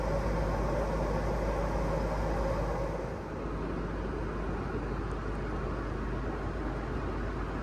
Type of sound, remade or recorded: recorded